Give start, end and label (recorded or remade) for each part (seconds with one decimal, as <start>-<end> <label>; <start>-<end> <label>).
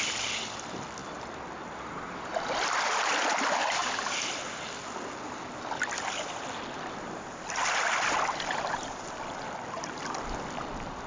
0.0-11.1 recorded